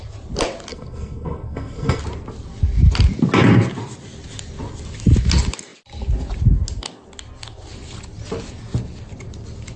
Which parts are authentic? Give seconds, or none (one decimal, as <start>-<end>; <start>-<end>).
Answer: 0.0-0.7; 2.0-9.8